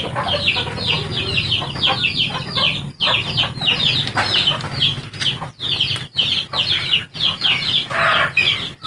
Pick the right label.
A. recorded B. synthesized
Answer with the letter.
A